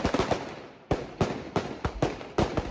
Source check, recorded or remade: recorded